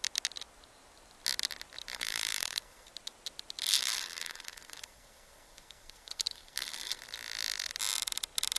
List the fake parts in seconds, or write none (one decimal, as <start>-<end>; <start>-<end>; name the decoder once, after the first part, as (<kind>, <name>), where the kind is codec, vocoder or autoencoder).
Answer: 1.9-2.9 (codec, SNAC); 3.7-7.0